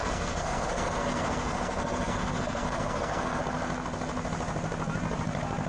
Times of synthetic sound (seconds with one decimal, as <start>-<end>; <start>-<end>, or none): 0.0-3.4